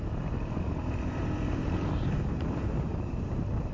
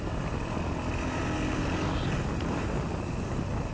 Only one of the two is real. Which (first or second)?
second